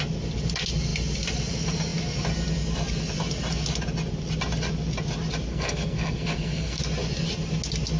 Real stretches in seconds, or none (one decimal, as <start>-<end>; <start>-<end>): 0.0-5.5; 6.8-8.0